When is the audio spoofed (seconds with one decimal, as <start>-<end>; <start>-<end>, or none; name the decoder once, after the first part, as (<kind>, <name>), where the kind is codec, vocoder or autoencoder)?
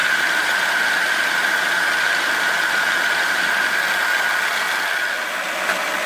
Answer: 0.0-3.7 (vocoder, BigVGAN v2)